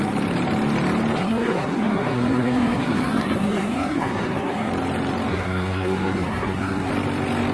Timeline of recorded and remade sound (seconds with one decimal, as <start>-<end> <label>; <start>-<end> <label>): 0.0-1.2 recorded; 1.2-4.7 remade; 4.7-5.3 recorded; 5.3-6.9 remade; 6.9-7.5 recorded